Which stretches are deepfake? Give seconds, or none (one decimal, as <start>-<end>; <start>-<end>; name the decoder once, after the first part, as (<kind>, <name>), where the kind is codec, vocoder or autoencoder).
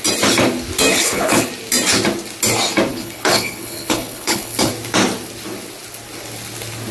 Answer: 0.9-1.5 (codec, HILCodec); 2.9-4.7